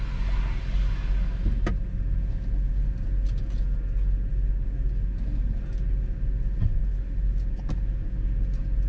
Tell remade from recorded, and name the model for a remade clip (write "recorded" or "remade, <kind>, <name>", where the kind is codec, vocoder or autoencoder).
recorded